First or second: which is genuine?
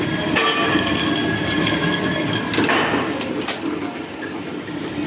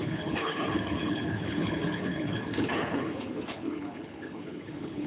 first